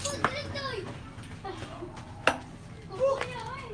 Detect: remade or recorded recorded